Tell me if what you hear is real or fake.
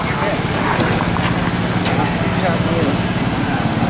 real